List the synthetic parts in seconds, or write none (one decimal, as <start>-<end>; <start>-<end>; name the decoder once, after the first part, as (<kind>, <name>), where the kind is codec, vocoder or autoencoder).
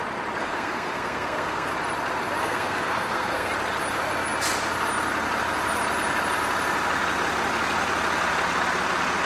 0.4-1.7 (codec, SNAC); 2.4-3.5